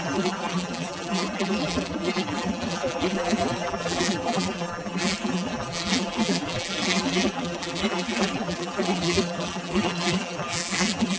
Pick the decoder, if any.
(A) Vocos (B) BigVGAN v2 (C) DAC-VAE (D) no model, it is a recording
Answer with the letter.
B